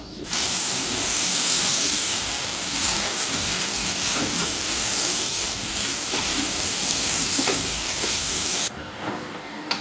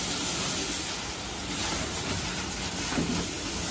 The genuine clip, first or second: second